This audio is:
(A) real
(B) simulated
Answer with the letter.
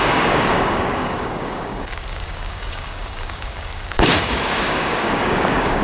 B